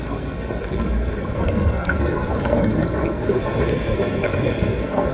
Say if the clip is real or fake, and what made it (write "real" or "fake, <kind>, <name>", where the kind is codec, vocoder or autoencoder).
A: fake, codec, SNAC